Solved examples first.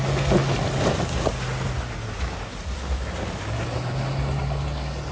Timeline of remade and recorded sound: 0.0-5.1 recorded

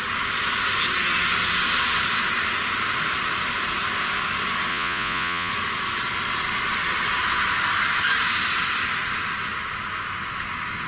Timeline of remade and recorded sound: 0.0-4.7 recorded; 4.7-5.5 remade; 5.5-10.9 recorded

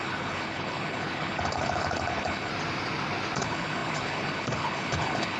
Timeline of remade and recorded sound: 0.0-2.5 remade; 2.5-3.4 recorded; 3.4-5.4 remade